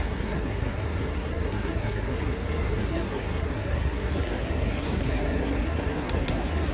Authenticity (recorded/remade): remade